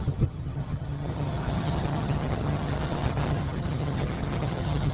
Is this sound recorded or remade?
remade